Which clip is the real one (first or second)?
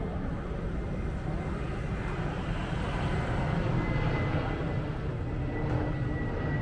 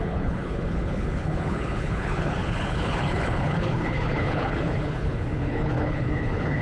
first